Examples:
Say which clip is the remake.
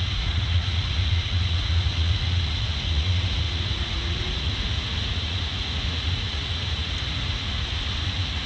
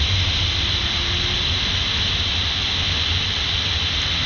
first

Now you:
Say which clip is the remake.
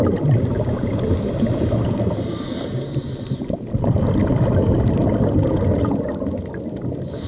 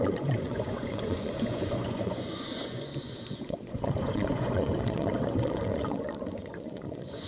second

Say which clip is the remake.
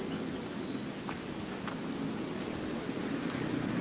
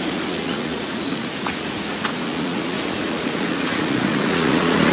second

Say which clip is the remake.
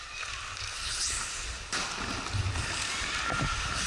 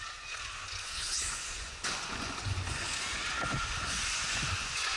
second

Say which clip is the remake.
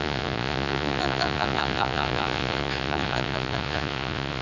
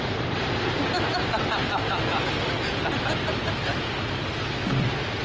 first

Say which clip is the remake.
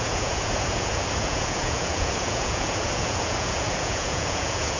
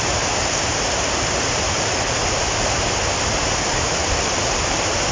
first